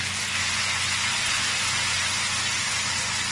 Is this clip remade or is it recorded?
remade